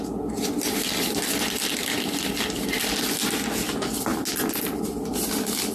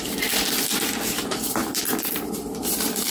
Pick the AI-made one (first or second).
second